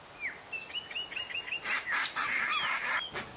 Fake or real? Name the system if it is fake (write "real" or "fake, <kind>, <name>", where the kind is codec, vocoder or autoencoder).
real